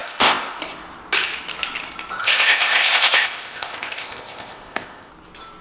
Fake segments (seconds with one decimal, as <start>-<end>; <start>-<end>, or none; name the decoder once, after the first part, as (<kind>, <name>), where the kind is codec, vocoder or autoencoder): 0.0-0.6 (codec, ZipCodec); 2.2-5.1